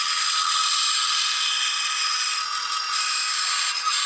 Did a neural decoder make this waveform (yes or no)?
no